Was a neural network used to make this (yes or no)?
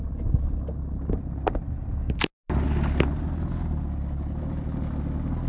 no